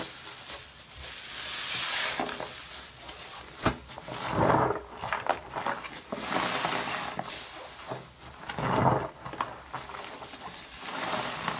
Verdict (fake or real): real